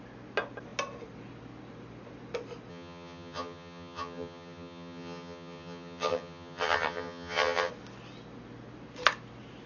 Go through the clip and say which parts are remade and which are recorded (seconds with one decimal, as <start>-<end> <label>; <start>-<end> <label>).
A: 0.0-2.7 recorded; 2.7-7.7 remade; 7.7-9.7 recorded